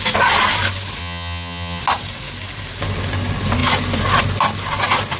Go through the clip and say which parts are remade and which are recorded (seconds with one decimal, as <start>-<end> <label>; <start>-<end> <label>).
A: 0.0-1.0 recorded; 1.0-1.8 remade; 1.8-5.2 recorded